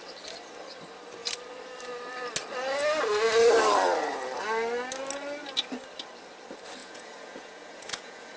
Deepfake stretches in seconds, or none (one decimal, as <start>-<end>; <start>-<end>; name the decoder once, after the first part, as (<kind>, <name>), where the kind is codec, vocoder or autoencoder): 6.8-8.4 (vocoder, Vocos)